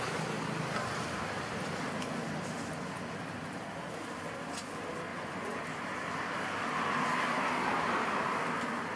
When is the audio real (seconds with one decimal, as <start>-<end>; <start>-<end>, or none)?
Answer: 0.0-5.1; 5.6-9.0